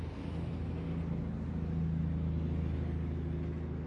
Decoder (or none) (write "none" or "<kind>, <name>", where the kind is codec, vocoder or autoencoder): none